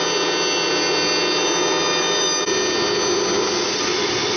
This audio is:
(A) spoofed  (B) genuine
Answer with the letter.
B